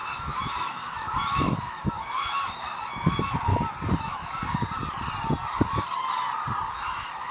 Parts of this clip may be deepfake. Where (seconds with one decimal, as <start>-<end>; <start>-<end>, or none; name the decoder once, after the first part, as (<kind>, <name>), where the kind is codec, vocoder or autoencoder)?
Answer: 0.0-3.5 (autoencoder, DAC-VAE); 4.0-4.4; 6.7-7.3

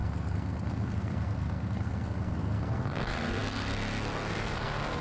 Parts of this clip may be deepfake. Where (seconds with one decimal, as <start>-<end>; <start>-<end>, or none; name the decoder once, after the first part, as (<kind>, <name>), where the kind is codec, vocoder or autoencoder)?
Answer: 0.0-5.0 (codec, SNAC)

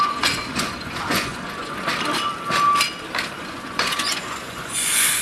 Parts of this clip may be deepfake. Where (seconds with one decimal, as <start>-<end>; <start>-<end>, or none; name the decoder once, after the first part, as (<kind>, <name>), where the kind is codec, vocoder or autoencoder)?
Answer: 0.0-1.9 (vocoder, Vocos); 3.4-5.2